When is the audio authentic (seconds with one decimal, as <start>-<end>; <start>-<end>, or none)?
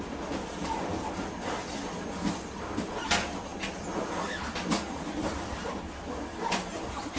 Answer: 0.0-7.2